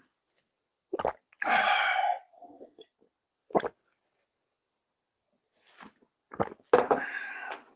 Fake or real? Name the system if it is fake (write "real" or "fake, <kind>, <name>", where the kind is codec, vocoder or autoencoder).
real